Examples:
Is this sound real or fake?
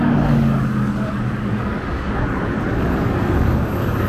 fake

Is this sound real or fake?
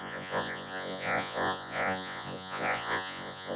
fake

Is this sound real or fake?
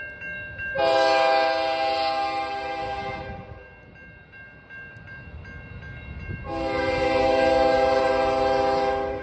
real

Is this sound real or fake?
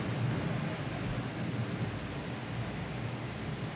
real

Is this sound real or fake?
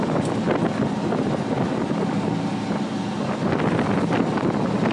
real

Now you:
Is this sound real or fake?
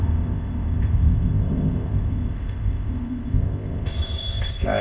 fake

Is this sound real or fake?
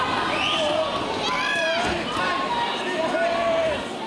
real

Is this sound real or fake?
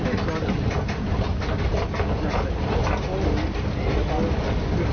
real